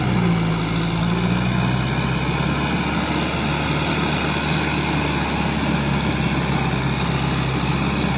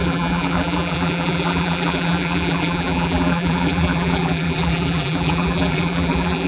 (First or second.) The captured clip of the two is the first